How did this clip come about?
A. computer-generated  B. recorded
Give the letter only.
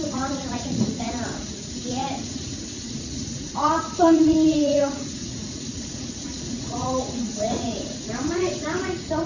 A